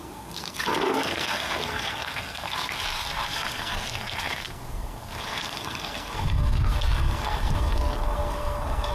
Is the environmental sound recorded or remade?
remade